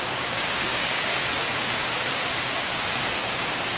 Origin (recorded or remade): remade